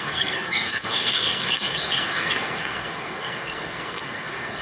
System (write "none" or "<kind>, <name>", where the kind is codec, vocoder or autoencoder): codec, SNAC